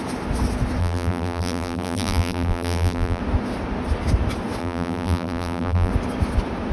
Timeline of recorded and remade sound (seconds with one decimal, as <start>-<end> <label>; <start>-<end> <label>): 0.0-0.8 recorded; 0.8-3.2 remade; 3.2-4.6 recorded; 4.6-5.9 remade; 5.9-6.7 recorded